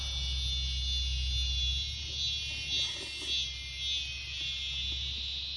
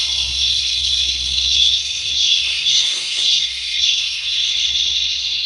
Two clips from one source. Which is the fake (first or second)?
second